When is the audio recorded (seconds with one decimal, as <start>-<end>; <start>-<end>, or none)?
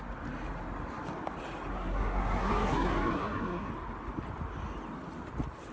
0.0-1.7; 3.7-5.7